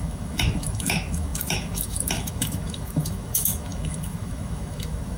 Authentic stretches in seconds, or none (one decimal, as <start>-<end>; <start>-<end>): none